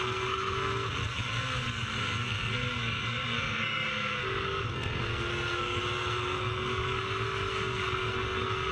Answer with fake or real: fake